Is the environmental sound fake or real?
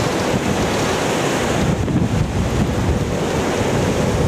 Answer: real